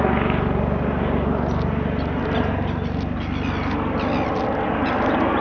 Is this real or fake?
real